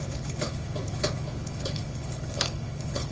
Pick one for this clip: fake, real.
fake